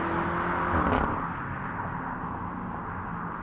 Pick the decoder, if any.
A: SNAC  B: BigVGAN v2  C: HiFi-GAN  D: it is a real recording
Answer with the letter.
D